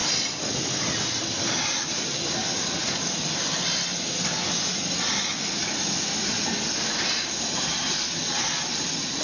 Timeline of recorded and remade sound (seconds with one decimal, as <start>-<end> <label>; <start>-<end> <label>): 0.0-9.2 recorded